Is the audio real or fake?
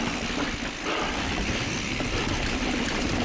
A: real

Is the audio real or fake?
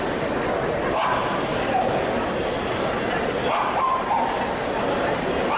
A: real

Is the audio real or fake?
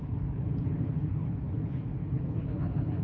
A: fake